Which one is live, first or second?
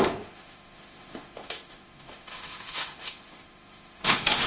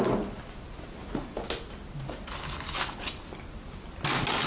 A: second